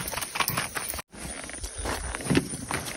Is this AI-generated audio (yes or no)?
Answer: no